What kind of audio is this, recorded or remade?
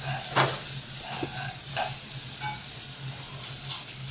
recorded